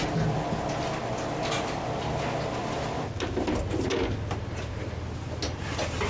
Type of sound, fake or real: real